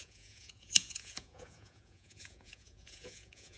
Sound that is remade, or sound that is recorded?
remade